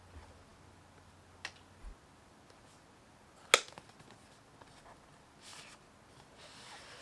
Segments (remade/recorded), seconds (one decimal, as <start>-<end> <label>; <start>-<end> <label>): 0.0-7.0 recorded